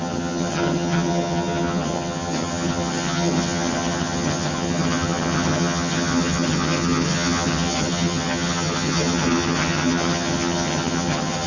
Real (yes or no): no